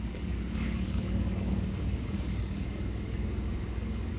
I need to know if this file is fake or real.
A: fake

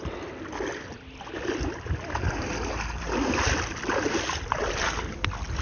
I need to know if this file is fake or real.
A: real